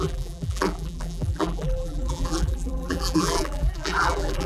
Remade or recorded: remade